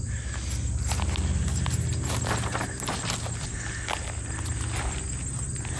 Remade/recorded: recorded